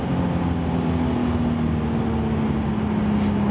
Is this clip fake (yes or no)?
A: no